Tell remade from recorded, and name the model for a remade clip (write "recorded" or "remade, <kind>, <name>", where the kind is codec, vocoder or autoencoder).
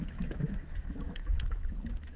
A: remade, autoencoder, DAC-VAE